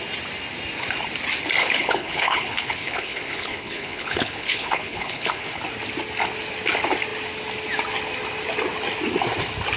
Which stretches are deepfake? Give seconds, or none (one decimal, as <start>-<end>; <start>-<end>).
1.6-5.6